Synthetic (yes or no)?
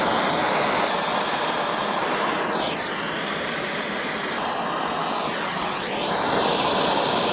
no